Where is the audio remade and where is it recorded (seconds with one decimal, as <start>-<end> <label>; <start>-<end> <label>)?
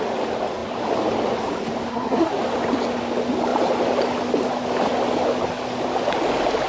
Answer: 0.0-1.9 recorded; 1.9-2.4 remade; 2.4-6.7 recorded